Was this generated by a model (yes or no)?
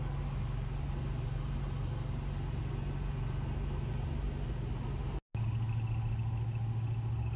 no